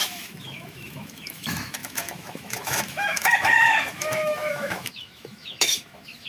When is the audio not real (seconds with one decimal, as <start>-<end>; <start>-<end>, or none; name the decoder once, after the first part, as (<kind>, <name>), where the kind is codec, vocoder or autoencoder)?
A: 0.0-6.3 (autoencoder, DAC-VAE)